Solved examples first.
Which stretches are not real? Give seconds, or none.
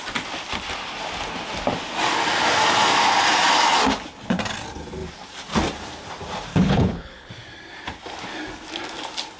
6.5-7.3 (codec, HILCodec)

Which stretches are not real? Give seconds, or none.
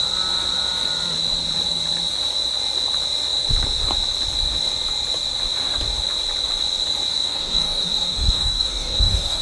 7.1-9.4 (codec, DAC)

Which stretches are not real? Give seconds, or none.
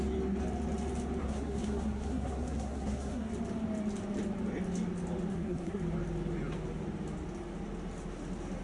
1.2-3.3 (codec, SNAC); 5.3-5.8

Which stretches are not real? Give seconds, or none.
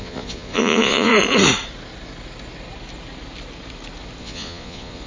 0.0-1.1 (vocoder, Vocos); 4.2-5.1